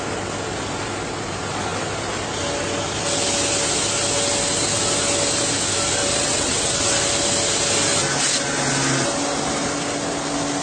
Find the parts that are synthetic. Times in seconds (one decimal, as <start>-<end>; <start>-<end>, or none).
6.1-7.0